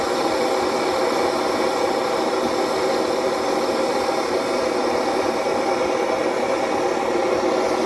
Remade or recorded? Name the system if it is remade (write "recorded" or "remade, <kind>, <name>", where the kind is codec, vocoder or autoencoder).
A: recorded